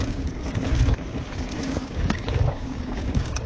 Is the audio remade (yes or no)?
yes